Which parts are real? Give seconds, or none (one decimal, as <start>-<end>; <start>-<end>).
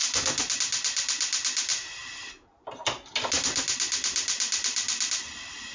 0.0-5.7